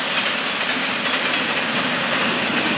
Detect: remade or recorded recorded